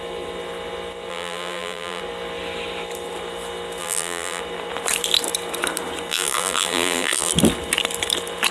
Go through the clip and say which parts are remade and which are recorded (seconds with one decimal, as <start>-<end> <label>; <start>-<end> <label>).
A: 0.0-1.1 recorded; 1.1-2.0 remade; 2.0-3.8 recorded; 3.8-4.4 remade; 4.4-6.1 recorded; 6.1-7.3 remade; 7.3-8.5 recorded